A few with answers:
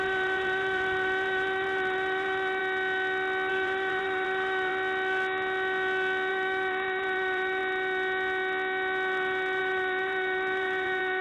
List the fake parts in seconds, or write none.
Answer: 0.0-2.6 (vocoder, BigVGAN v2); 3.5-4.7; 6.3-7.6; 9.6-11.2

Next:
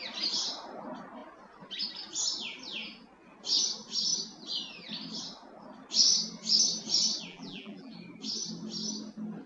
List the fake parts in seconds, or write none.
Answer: 7.3-7.9 (vocoder, BigVGAN v2)

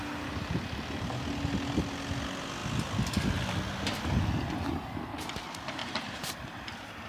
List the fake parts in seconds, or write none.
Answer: 5.8-7.1 (vocoder, BigVGAN v2)